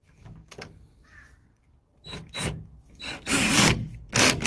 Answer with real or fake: fake